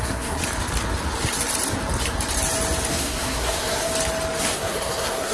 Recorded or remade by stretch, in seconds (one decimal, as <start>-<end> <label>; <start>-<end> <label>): 0.0-0.4 remade; 0.4-2.9 recorded; 2.9-3.9 remade; 3.9-4.4 recorded; 4.4-5.3 remade